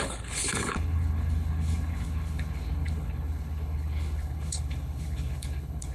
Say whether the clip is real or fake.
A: fake